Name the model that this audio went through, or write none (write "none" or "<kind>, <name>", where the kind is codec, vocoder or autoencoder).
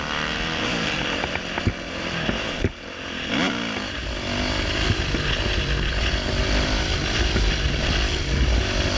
none